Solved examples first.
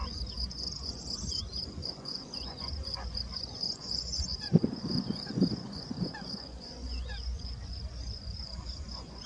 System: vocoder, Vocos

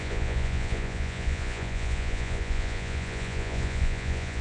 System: vocoder, Vocos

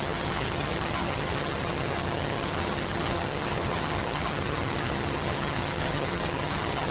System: vocoder, HiFi-GAN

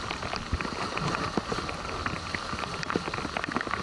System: none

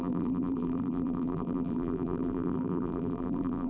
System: vocoder, BigVGAN v2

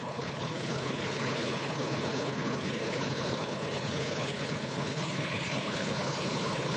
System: codec, HILCodec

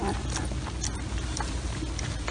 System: none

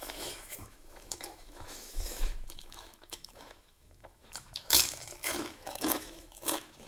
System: autoencoder, DAC-VAE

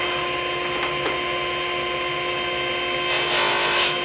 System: none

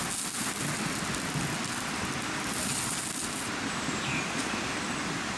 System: none